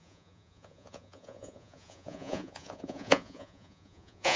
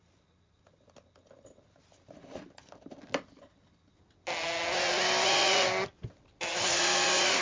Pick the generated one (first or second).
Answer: first